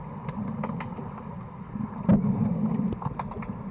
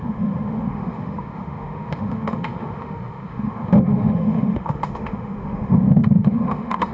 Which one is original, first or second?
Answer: first